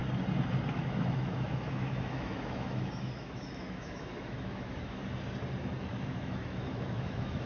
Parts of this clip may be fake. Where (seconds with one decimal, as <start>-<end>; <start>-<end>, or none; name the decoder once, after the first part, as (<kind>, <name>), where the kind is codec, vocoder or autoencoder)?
0.7-5.0 (autoencoder, DAC-VAE); 5.8-7.5